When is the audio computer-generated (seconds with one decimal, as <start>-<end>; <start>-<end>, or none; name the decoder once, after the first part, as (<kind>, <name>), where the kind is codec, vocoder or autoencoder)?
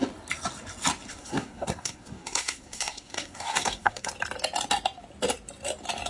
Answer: 1.1-4.1 (codec, SNAC)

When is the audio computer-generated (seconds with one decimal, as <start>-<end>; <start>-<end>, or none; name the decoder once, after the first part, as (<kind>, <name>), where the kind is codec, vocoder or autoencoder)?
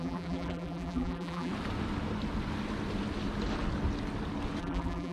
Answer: 0.0-1.5 (vocoder, BigVGAN v2); 4.6-5.1